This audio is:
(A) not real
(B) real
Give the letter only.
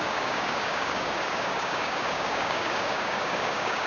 A